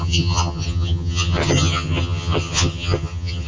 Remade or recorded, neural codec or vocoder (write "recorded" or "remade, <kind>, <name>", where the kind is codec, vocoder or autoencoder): remade, vocoder, HiFi-GAN